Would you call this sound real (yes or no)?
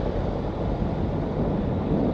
yes